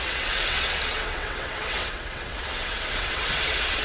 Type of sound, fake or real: fake